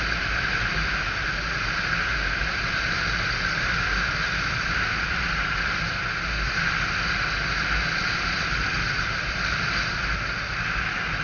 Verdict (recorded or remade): recorded